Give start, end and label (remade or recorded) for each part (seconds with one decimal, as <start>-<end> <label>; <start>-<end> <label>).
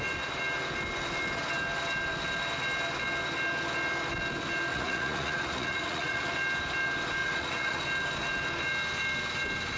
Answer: 0.0-4.7 recorded; 4.7-6.3 remade; 6.3-7.2 recorded; 7.2-7.8 remade; 7.8-9.8 recorded